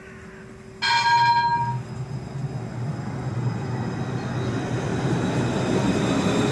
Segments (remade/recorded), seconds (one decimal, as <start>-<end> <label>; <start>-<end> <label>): 0.0-4.9 recorded; 4.9-6.5 remade